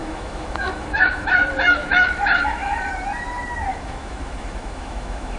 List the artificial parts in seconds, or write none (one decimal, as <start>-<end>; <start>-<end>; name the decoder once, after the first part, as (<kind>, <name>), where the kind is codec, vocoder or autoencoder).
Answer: 0.0-2.9 (autoencoder, DAC-VAE); 3.7-5.4